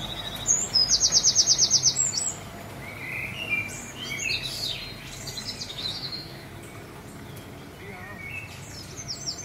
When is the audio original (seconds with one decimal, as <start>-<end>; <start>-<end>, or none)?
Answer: 0.0-5.7; 6.5-9.4